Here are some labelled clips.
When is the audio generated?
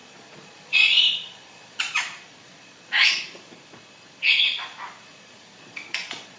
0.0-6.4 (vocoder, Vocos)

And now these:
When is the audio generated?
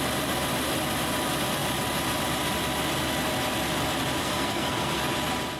4.2-5.1 (codec, SNAC)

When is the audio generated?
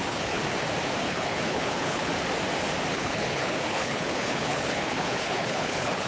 0.0-0.4 (codec, HILCodec); 1.0-2.1; 2.9-6.1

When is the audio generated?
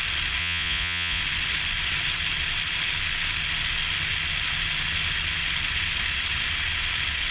0.4-1.2 (vocoder, Vocos)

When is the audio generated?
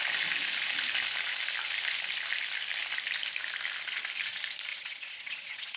4.7-5.8 (vocoder, Vocos)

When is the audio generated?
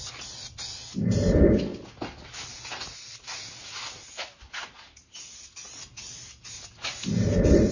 none